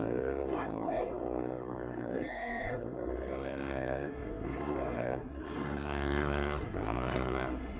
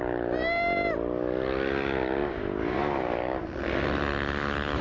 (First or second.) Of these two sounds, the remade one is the first